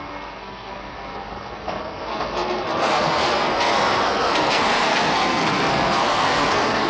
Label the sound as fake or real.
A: fake